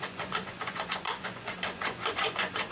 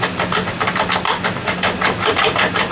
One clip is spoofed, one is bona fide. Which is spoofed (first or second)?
first